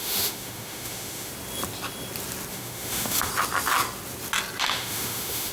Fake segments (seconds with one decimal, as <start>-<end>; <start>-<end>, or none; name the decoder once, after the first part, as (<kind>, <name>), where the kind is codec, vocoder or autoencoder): 0.0-1.3 (autoencoder, DAC-VAE); 2.5-3.3; 4.6-5.5